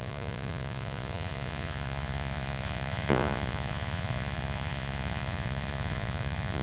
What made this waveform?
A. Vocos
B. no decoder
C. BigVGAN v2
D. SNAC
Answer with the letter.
A